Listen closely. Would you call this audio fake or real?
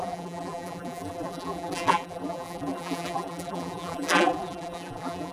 fake